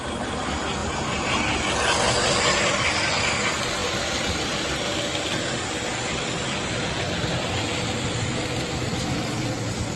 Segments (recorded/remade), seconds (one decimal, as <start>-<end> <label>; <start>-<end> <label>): 0.0-10.0 recorded